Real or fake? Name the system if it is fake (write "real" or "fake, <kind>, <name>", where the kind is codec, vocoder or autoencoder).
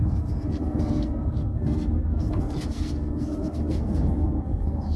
fake, codec, SNAC